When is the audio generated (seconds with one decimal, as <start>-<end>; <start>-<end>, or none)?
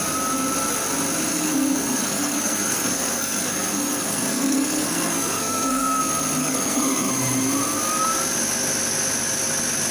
1.3-6.0; 6.4-7.1